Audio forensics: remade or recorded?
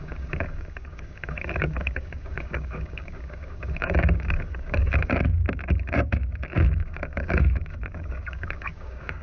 remade